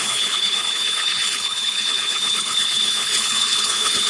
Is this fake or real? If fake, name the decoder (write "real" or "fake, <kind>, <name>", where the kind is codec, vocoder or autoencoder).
fake, codec, HILCodec